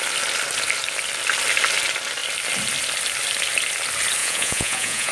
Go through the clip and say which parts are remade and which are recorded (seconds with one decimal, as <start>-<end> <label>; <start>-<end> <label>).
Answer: 0.0-4.2 recorded; 4.2-5.1 remade